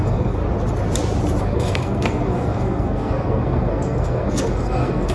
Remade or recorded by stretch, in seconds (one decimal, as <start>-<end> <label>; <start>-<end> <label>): 0.0-0.4 remade; 0.4-1.4 recorded; 1.4-5.1 remade